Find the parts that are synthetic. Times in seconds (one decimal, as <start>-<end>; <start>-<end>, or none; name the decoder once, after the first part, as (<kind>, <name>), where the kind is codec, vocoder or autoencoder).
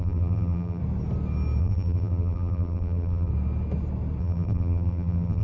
0.0-0.8 (vocoder, BigVGAN v2); 1.6-3.3; 4.2-5.4